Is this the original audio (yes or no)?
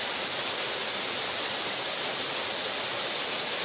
yes